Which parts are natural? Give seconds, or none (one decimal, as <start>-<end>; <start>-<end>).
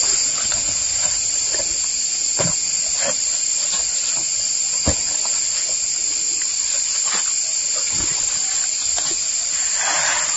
4.2-6.2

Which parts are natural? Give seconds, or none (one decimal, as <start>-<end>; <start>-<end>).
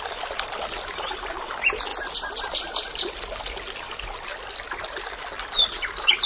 1.9-2.4; 2.9-3.8; 4.3-5.4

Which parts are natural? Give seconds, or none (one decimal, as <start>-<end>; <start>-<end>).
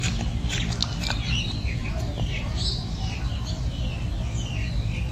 0.0-1.8; 3.8-5.1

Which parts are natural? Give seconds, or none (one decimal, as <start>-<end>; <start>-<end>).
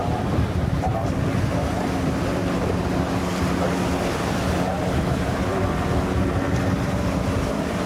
0.0-7.9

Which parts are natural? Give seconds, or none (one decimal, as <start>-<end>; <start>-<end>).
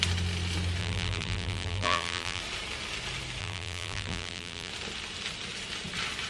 0.0-0.8; 2.4-3.4; 4.7-6.3